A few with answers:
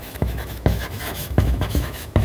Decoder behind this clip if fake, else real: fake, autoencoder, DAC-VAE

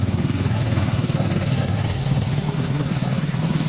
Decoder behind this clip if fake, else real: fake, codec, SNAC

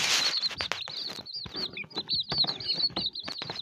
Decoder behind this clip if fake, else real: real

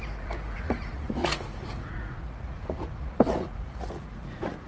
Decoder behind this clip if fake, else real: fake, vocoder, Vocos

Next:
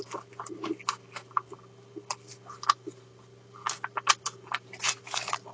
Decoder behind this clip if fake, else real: real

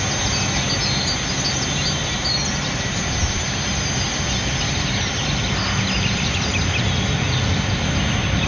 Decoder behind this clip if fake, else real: real